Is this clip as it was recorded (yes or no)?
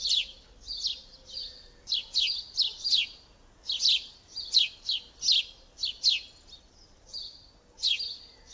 yes